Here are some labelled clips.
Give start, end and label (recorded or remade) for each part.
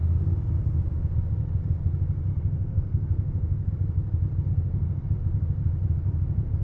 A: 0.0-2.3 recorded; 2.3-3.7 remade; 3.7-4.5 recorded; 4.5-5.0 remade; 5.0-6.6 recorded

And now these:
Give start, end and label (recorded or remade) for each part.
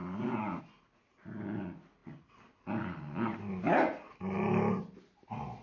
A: 0.0-5.6 recorded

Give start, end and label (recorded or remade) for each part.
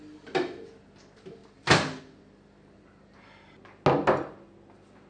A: 0.0-5.1 recorded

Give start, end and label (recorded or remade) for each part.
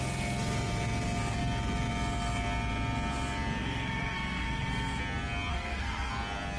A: 0.0-3.6 recorded; 3.6-5.0 remade; 5.0-5.5 recorded; 5.5-6.1 remade; 6.1-6.6 recorded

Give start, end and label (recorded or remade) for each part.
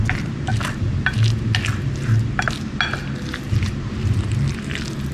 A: 0.0-5.1 recorded